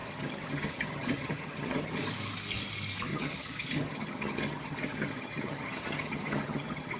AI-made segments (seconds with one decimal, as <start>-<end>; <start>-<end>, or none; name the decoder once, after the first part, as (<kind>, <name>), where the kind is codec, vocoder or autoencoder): 0.0-1.9 (vocoder, HiFi-GAN); 3.1-7.0